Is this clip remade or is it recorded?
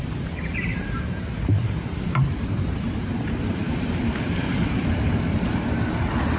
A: remade